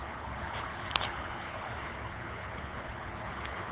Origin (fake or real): fake